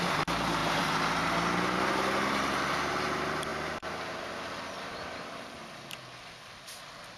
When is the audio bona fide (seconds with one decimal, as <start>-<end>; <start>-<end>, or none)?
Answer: 0.0-7.2